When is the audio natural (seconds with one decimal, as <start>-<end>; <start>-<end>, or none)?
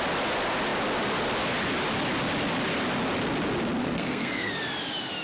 0.0-3.8; 4.5-5.2